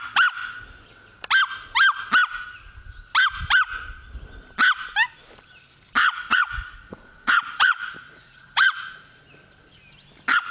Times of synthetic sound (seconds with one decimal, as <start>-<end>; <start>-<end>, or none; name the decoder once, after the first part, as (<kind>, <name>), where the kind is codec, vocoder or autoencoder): 6.0-9.2 (vocoder, Vocos)